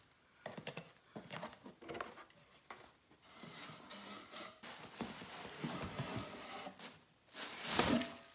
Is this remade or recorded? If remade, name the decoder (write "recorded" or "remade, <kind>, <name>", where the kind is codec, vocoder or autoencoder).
recorded